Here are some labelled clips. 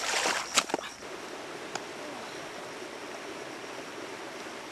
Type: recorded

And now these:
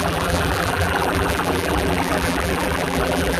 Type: remade